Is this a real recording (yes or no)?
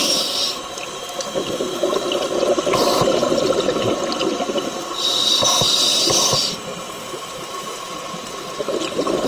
yes